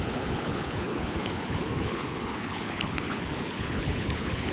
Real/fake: fake